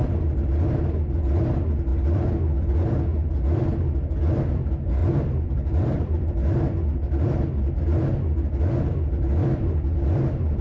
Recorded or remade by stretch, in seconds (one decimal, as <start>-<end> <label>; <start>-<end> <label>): 0.0-5.0 recorded; 5.0-6.3 remade; 6.3-10.6 recorded